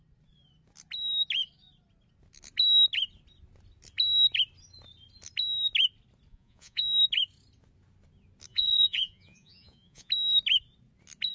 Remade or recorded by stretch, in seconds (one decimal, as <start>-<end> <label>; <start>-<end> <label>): 0.0-6.3 recorded; 6.3-6.8 remade; 6.8-8.5 recorded; 8.5-10.1 remade; 10.1-11.3 recorded